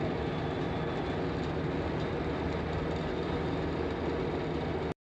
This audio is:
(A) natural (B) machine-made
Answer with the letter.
A